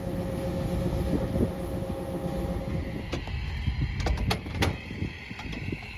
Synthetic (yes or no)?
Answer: no